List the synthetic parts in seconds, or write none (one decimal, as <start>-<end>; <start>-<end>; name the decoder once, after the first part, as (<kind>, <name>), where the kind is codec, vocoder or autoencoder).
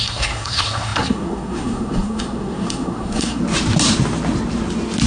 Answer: 0.0-3.4 (codec, SNAC)